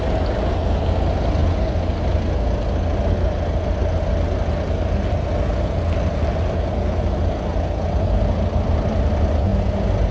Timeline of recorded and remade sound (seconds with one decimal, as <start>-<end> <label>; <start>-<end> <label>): 0.0-10.1 recorded